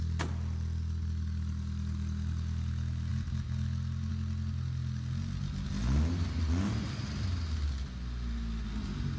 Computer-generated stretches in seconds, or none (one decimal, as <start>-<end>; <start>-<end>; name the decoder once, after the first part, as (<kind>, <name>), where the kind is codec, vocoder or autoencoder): none